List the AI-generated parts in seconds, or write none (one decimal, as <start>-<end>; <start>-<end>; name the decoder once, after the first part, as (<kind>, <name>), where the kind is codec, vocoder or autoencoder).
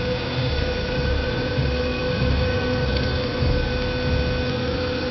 0.0-3.7 (codec, SNAC); 4.5-5.1